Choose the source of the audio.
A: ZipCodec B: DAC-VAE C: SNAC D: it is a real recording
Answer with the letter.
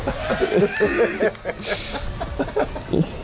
D